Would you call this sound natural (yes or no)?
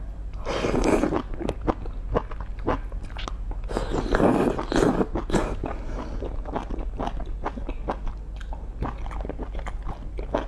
yes